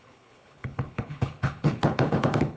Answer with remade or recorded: remade